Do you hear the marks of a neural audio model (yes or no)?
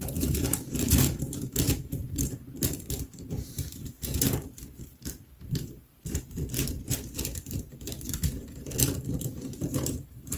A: yes